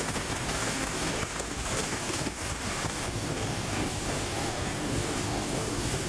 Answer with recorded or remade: remade